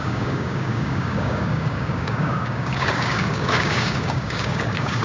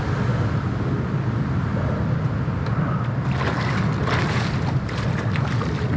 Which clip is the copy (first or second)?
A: first